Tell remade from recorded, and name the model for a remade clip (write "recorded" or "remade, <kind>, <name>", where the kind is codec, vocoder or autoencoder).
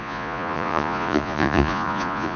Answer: remade, vocoder, Vocos